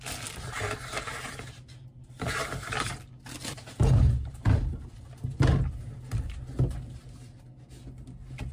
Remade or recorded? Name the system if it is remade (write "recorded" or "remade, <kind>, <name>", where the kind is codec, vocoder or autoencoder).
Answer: recorded